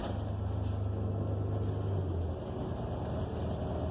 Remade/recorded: recorded